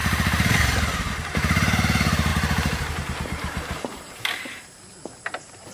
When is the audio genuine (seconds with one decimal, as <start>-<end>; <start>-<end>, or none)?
none